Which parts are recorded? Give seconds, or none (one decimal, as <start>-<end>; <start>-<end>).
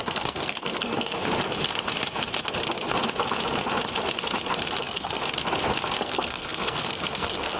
1.1-4.8; 5.2-6.0